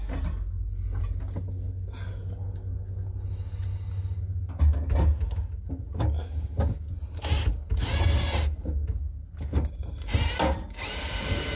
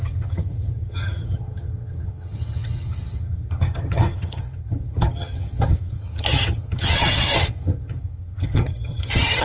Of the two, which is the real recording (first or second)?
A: first